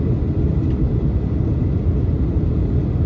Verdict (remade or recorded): remade